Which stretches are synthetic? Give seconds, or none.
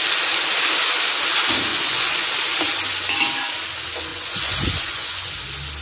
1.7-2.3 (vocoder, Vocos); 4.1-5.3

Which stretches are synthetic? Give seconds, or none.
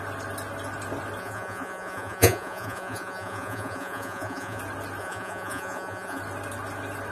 1.2-4.6 (vocoder, Vocos); 5.0-6.2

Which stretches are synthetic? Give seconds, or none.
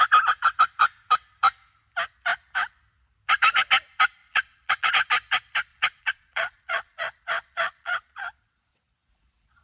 4.2-4.9 (vocoder, Vocos); 5.7-9.6